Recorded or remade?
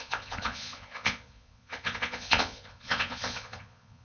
remade